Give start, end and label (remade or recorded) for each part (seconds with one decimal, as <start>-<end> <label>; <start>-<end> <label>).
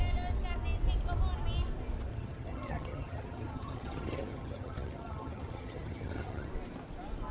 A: 0.0-2.1 recorded; 2.1-6.5 remade; 6.5-7.3 recorded